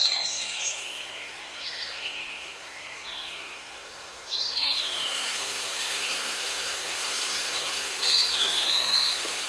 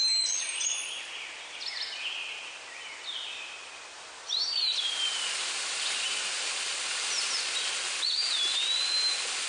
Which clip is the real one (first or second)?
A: second